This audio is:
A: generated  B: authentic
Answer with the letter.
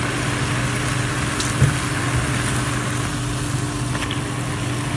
B